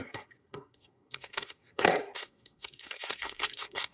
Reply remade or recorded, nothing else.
remade